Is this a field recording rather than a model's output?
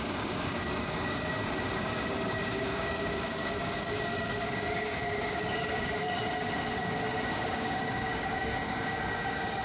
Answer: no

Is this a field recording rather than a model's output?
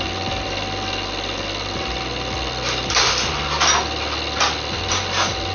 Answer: yes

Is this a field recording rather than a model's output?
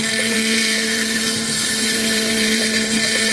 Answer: no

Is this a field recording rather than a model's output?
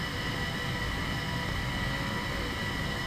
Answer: yes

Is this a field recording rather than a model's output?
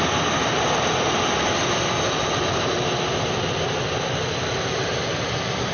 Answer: yes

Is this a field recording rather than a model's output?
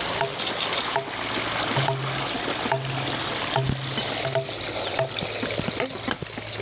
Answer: yes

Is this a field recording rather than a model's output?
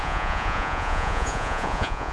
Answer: no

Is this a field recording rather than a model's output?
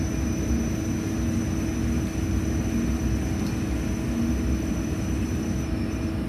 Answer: yes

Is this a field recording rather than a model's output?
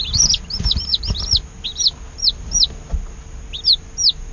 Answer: yes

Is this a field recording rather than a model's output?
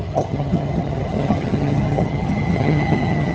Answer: no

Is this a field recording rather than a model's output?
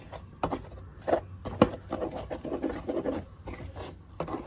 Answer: yes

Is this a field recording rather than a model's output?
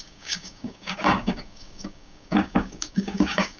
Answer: no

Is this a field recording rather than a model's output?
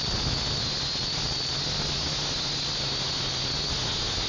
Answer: yes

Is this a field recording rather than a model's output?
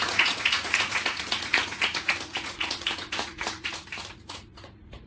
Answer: no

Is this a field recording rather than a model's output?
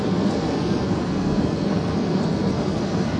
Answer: no